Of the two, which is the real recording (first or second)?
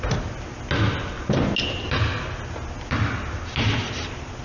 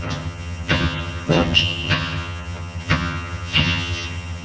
first